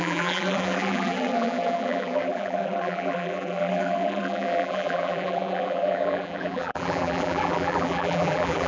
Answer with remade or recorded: remade